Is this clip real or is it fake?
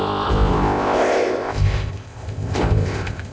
fake